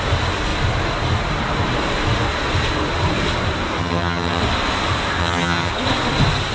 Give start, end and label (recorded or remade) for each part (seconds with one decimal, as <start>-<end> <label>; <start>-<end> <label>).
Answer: 0.0-3.8 recorded; 3.8-4.4 remade; 4.4-5.2 recorded; 5.2-5.7 remade; 5.7-6.5 recorded